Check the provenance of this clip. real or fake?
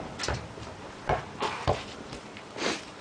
fake